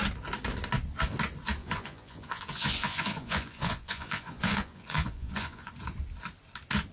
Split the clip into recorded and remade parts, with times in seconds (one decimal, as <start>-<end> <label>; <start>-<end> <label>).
0.0-1.6 recorded; 1.6-5.7 remade; 5.7-6.9 recorded